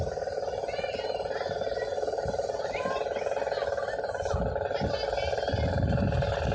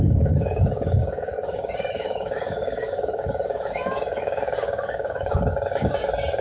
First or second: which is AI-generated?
second